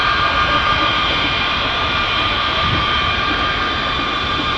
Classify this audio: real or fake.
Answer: fake